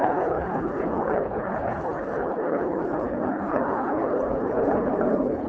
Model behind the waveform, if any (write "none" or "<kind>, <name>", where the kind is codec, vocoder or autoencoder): codec, HILCodec